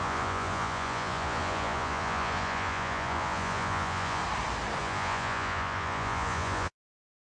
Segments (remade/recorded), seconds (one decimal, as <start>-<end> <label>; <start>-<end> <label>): 0.0-4.2 remade; 4.2-4.8 recorded; 4.8-7.3 remade